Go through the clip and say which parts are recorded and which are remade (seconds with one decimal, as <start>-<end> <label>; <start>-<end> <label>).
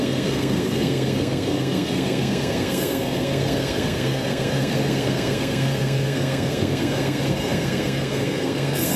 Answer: 0.0-9.0 remade